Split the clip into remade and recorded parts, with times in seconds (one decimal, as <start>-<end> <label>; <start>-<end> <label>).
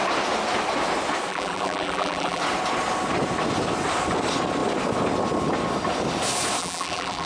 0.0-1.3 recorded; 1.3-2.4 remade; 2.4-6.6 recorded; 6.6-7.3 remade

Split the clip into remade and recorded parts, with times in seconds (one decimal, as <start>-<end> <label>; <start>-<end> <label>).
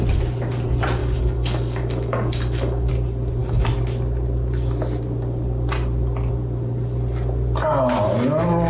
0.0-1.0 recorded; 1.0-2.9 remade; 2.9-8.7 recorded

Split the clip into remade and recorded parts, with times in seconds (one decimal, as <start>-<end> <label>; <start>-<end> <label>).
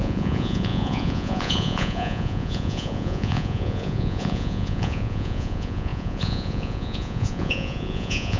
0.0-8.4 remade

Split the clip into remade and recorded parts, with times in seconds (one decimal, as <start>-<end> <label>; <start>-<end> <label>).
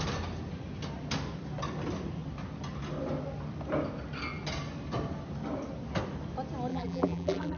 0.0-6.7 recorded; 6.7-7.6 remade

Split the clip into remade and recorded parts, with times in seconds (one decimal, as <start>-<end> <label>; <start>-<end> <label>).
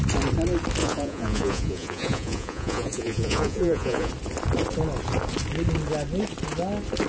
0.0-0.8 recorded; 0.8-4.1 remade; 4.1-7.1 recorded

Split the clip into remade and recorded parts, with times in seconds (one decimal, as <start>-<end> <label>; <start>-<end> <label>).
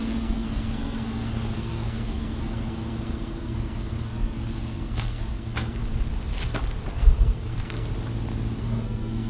0.0-5.8 remade; 5.8-6.9 recorded; 6.9-7.9 remade; 7.9-8.6 recorded; 8.6-9.3 remade